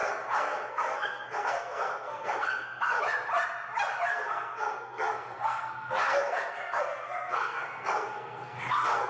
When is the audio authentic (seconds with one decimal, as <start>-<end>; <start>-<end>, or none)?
3.0-4.1